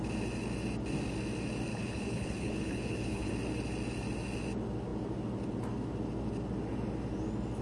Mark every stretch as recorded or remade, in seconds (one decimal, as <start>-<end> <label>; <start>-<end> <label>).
0.0-1.7 recorded; 1.7-3.3 remade; 3.3-7.6 recorded